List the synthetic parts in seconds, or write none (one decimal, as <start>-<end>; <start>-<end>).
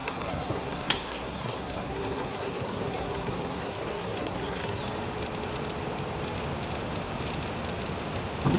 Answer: 0.0-4.8